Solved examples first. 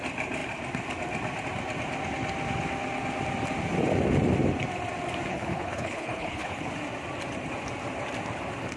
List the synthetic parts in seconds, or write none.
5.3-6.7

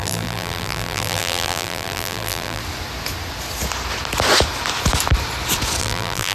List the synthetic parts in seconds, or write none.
0.0-2.6; 5.8-6.3

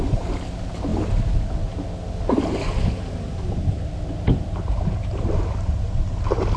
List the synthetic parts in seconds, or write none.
none

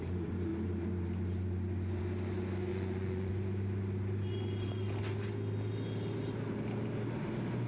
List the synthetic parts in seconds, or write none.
2.7-3.3

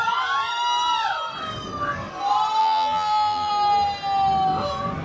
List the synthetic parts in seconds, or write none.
2.6-3.5

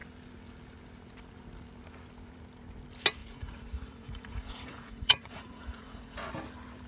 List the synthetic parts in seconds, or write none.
3.2-6.3